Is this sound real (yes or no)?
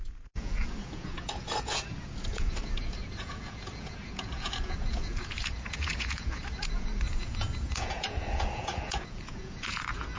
no